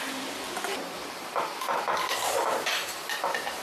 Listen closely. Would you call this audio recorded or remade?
remade